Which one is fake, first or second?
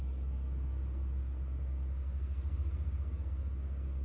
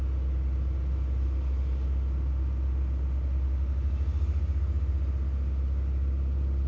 first